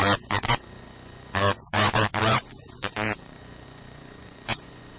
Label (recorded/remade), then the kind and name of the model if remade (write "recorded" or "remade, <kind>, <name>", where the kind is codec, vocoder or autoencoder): remade, vocoder, Vocos